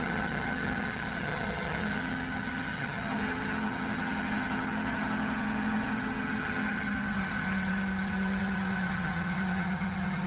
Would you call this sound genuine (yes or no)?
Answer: no